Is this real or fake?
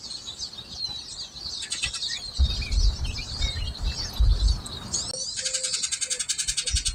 real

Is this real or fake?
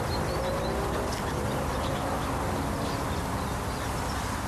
real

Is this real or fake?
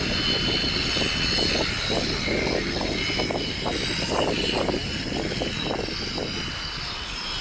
real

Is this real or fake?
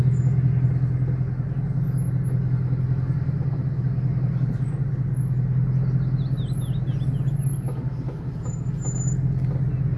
real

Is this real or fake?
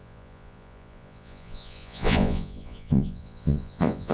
fake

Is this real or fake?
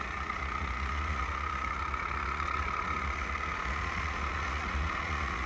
fake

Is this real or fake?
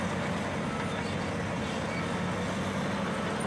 real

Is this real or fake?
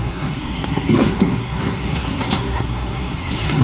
fake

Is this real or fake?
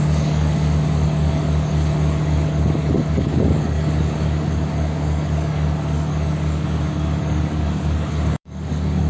fake